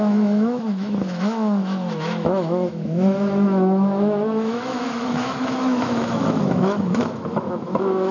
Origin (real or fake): fake